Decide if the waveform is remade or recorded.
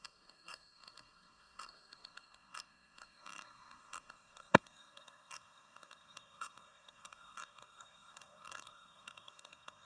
remade